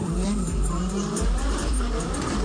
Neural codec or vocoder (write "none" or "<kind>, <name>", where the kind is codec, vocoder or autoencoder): vocoder, BigVGAN v2